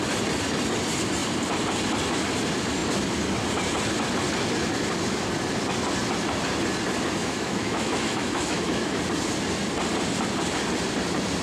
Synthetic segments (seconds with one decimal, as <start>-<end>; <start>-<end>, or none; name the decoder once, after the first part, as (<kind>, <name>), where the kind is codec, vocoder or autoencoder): 7.2-9.0 (autoencoder, DAC-VAE)